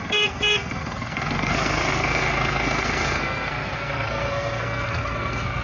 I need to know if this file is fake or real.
fake